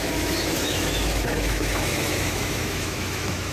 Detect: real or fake fake